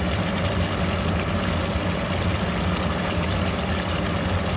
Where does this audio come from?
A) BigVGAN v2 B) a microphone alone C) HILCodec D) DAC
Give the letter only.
B